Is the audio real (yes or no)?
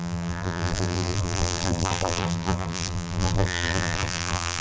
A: no